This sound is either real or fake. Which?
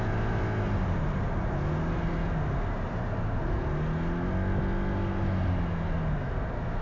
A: real